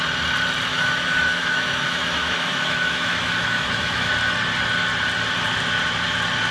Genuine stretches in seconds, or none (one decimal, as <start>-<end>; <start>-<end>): 0.0-0.7; 4.1-6.5